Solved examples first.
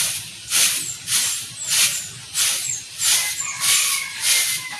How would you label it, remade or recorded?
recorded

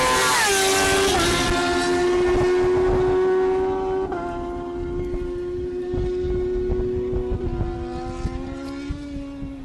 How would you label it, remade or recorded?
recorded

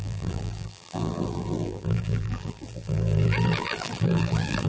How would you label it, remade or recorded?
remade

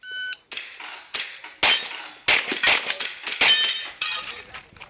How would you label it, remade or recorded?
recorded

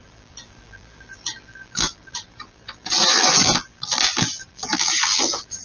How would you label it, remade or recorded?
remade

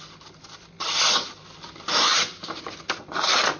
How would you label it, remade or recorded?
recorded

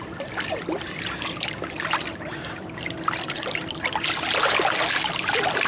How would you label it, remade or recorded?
recorded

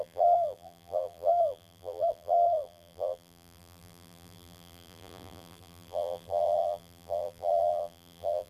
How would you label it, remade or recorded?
remade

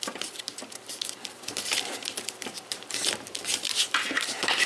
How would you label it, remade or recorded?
remade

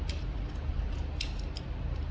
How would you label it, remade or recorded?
recorded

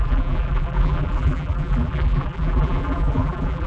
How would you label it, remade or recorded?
remade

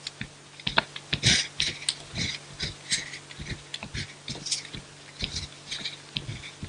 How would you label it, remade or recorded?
recorded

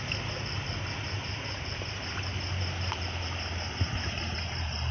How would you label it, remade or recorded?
recorded